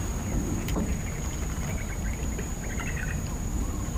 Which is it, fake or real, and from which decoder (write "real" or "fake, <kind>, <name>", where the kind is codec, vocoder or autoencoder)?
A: fake, vocoder, BigVGAN v2